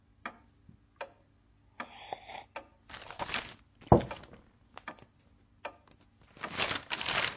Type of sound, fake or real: real